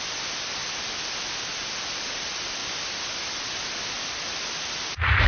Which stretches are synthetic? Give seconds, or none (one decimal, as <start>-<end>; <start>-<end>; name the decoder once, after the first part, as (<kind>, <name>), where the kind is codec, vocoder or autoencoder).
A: none

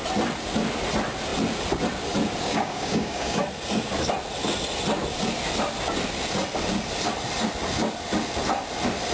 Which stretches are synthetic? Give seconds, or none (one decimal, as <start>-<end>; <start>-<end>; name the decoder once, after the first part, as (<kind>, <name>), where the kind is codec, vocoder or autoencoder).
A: 2.4-3.4 (codec, DAC)

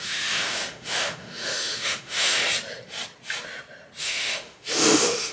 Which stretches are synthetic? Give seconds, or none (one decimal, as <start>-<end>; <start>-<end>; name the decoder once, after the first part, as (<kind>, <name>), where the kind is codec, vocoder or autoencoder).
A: 0.0-2.4 (autoencoder, DAC-VAE); 4.0-5.3

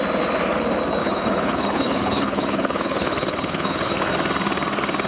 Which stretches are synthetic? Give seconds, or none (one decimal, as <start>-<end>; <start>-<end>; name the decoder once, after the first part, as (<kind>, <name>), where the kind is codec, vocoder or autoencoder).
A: 1.0-4.1 (codec, HILCodec)

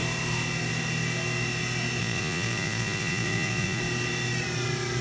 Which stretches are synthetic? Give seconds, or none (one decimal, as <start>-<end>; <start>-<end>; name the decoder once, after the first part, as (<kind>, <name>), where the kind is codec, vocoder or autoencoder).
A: 2.0-3.8 (vocoder, Vocos)